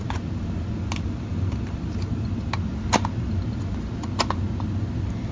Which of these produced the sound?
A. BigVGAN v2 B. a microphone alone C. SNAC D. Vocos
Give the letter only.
B